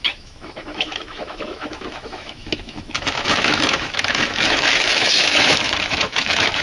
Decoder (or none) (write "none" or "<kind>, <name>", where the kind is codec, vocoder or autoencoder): autoencoder, DAC-VAE